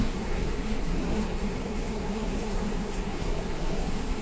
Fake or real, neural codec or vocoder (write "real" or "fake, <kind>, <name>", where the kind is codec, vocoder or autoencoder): fake, codec, SNAC